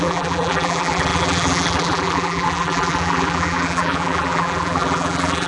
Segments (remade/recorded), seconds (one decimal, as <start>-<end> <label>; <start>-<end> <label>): 0.0-5.5 remade